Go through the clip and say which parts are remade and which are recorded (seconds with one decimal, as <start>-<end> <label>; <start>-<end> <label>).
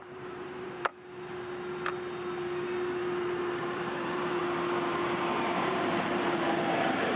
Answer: 0.0-0.9 remade; 0.9-3.6 recorded; 3.6-4.4 remade; 4.4-5.2 recorded; 5.2-7.2 remade